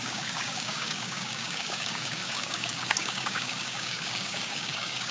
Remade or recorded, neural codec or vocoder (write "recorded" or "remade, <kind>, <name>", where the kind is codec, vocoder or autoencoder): remade, codec, DAC